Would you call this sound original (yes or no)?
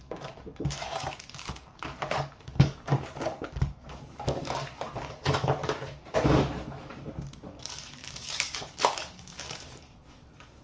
no